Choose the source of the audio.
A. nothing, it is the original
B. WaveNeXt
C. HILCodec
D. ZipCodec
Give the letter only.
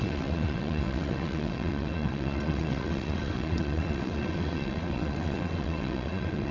B